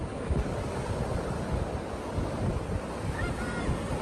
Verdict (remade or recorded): recorded